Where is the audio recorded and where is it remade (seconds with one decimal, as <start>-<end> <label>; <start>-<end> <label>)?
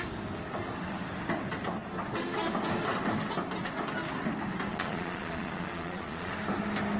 0.0-4.7 recorded; 4.7-6.3 remade; 6.3-7.0 recorded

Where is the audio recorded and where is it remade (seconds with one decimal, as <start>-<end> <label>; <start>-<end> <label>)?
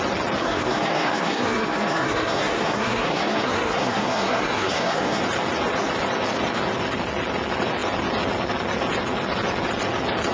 0.0-0.4 recorded; 0.4-5.2 remade; 5.2-10.3 recorded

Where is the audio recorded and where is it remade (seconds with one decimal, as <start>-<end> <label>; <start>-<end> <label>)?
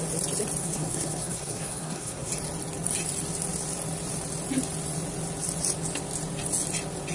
0.0-0.6 recorded; 0.6-2.3 remade; 2.3-7.1 recorded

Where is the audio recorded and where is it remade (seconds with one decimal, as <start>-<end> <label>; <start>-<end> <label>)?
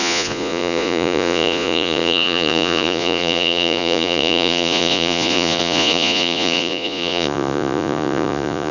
0.0-8.7 remade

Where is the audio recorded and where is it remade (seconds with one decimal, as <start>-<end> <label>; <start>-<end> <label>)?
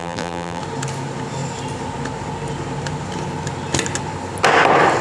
0.0-0.6 remade; 0.6-5.0 recorded